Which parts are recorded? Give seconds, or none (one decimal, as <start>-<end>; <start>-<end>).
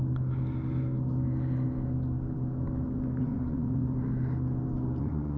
0.0-3.2; 3.8-5.0